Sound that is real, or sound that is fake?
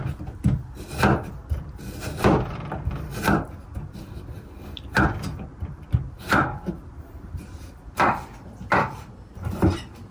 fake